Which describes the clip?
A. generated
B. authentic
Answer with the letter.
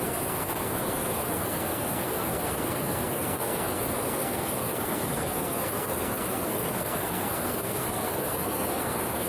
A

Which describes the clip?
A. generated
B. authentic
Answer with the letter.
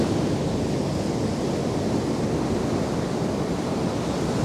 B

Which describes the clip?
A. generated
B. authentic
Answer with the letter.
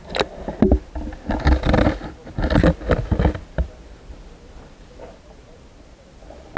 B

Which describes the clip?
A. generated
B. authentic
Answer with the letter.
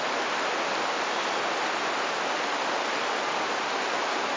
B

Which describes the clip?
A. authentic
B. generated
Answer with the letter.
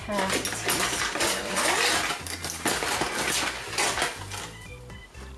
A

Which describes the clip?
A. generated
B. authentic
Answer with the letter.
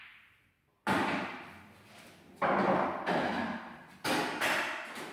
B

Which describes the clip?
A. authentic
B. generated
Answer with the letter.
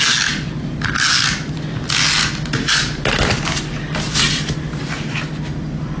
A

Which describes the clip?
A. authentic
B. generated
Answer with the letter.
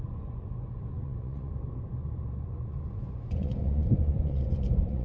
B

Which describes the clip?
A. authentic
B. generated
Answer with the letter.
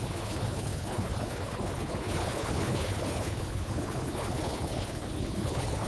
B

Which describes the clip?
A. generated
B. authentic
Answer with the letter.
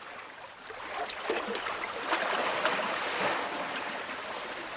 A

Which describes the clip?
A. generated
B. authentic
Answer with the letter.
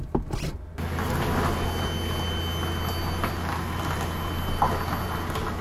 B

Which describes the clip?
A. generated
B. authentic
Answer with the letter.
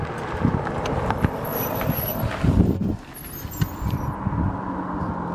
B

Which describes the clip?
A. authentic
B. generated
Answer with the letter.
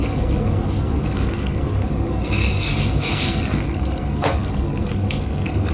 B